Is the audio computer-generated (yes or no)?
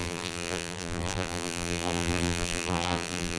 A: yes